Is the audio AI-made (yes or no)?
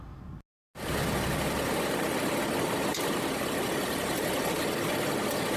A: no